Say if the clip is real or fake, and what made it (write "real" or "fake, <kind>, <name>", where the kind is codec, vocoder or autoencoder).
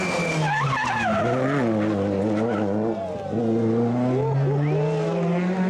real